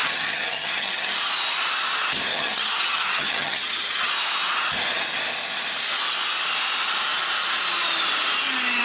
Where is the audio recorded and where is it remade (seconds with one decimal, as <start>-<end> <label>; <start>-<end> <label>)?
0.0-1.1 remade; 1.1-2.3 recorded; 2.3-4.1 remade; 4.1-8.8 recorded